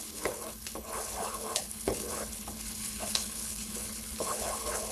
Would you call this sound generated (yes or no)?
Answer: yes